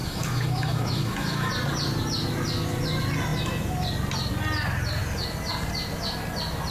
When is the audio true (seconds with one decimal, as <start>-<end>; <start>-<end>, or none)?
1.5-6.7